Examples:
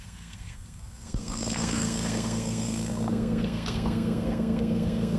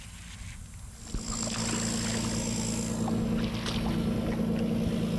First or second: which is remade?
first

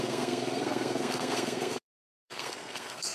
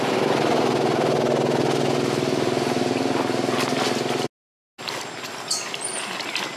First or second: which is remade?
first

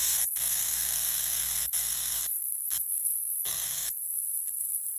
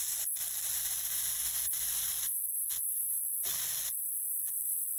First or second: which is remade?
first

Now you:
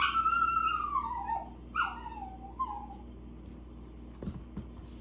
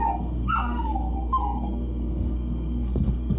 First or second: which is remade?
second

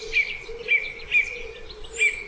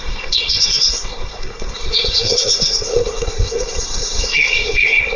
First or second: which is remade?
second